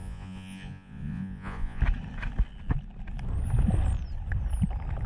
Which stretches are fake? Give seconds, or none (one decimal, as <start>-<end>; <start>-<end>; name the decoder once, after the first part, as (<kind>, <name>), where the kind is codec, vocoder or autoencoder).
0.0-1.8 (vocoder, Vocos)